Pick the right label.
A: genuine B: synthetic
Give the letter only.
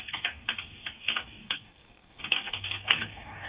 B